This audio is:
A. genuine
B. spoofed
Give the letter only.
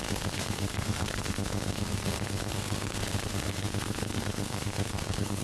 B